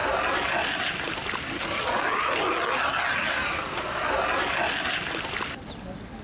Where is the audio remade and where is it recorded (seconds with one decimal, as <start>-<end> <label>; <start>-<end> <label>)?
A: 0.0-6.2 recorded